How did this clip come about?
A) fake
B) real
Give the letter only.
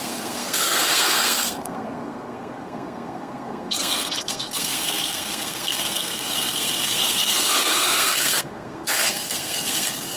A